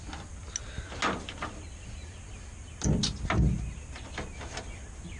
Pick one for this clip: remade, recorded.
recorded